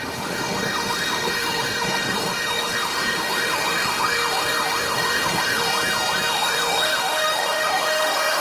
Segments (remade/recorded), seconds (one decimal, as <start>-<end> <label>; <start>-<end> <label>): 0.0-5.7 remade; 5.7-6.3 recorded; 6.3-8.4 remade